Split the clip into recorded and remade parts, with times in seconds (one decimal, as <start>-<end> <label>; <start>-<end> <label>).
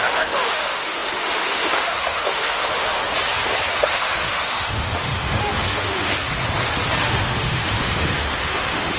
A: 0.0-3.0 remade; 3.0-3.7 recorded; 3.7-6.1 remade; 6.1-7.0 recorded; 7.0-9.0 remade